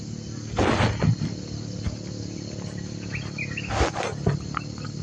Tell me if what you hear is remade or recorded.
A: recorded